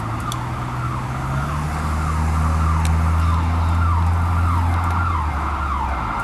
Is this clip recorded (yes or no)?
yes